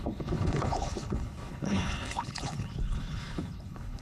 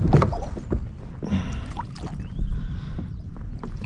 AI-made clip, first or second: first